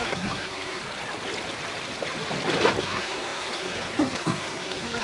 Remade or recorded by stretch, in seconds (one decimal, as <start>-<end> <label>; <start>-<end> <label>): 0.0-0.8 remade; 0.8-2.8 recorded; 2.8-5.0 remade